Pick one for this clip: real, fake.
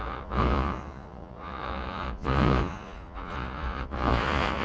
fake